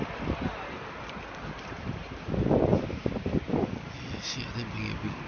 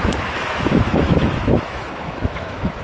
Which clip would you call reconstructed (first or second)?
second